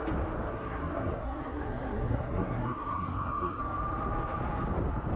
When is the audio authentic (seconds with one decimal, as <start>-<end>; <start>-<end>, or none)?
0.0-0.5; 3.6-5.2